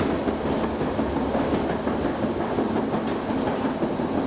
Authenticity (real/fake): real